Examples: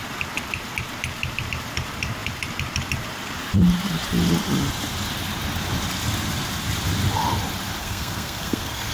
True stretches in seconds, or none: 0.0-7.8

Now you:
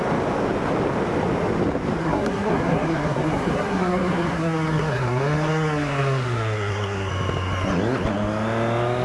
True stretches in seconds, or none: 0.0-2.0; 7.1-9.0